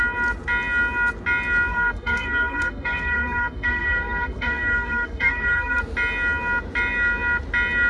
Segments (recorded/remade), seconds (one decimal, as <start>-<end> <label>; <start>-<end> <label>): 0.0-1.7 recorded; 1.7-5.8 remade; 5.8-7.9 recorded